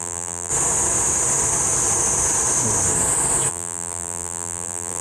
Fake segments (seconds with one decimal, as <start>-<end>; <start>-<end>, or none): 0.0-0.5; 3.5-5.0